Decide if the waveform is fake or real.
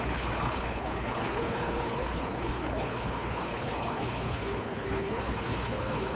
fake